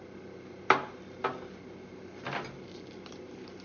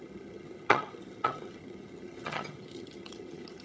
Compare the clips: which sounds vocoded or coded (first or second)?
second